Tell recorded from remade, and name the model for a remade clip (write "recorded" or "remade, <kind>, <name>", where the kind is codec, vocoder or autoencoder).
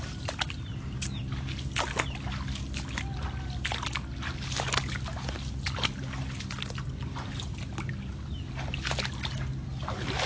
recorded